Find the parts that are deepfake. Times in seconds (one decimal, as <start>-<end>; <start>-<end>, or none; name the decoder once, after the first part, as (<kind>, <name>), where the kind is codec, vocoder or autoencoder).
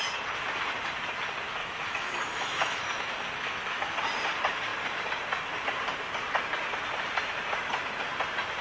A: 1.6-3.9 (autoencoder, DAC-VAE)